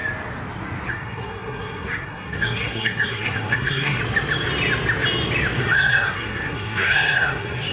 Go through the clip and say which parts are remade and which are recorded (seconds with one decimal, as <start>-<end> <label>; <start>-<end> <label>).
0.0-0.9 recorded; 0.9-4.0 remade; 4.0-5.6 recorded; 5.6-7.7 remade